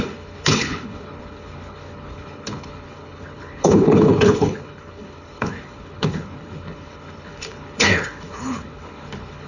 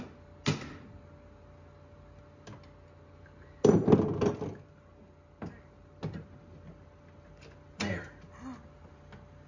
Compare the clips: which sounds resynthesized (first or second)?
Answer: first